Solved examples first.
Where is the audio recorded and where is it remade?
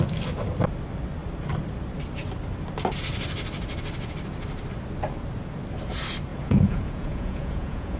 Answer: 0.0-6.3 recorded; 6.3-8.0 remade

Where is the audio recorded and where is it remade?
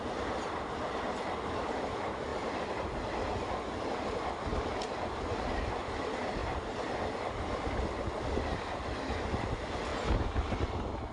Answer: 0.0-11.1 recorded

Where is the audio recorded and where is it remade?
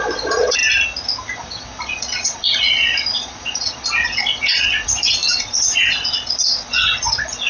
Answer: 0.0-0.6 remade; 0.6-1.8 recorded; 1.8-7.5 remade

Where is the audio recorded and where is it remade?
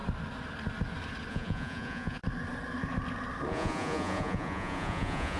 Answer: 0.0-1.3 recorded; 1.3-2.2 remade; 2.2-3.5 recorded; 3.5-5.4 remade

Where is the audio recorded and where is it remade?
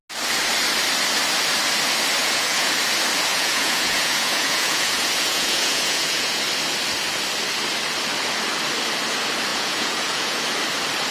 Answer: 0.0-2.2 recorded; 2.2-2.7 remade; 2.7-3.3 recorded; 3.3-6.4 remade; 6.4-9.5 recorded; 9.5-10.4 remade; 10.4-11.1 recorded